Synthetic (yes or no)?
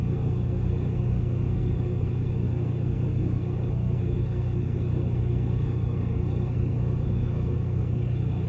yes